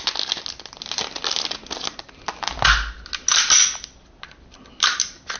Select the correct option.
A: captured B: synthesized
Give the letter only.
A